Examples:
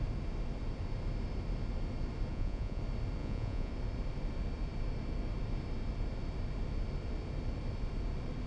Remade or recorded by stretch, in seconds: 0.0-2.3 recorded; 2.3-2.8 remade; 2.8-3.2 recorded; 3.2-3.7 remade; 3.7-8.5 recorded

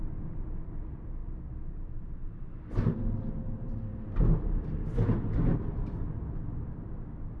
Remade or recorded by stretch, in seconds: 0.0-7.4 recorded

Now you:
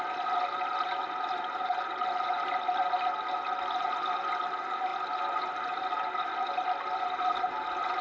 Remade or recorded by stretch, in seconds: 0.0-8.0 recorded

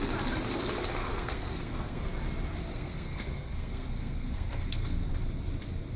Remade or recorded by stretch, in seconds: 0.0-1.0 recorded; 1.0-2.0 remade; 2.0-2.7 recorded; 2.7-5.1 remade; 5.1-6.0 recorded